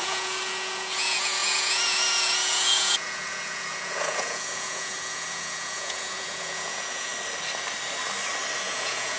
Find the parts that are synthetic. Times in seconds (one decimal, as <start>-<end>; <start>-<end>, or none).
0.0-7.1; 8.6-9.2